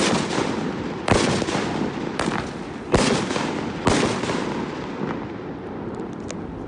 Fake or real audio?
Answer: real